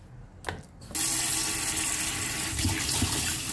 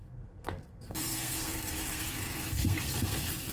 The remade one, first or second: second